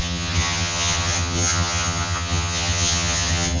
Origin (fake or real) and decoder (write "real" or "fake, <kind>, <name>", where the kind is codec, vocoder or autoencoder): fake, vocoder, HiFi-GAN